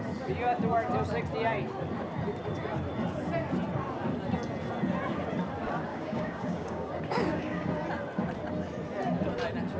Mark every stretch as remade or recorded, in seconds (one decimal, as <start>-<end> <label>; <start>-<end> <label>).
0.0-5.9 recorded; 5.9-7.7 remade; 7.7-9.8 recorded